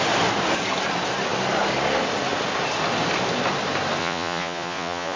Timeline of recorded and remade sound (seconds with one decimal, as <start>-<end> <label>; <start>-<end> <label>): 0.0-4.0 recorded; 4.0-5.2 remade